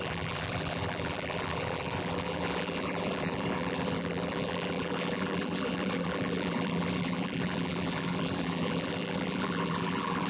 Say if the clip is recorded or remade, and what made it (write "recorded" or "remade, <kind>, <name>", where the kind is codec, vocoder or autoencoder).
remade, vocoder, BigVGAN v2